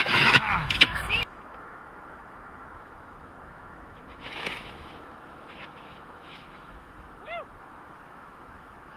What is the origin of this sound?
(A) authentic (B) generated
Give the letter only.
B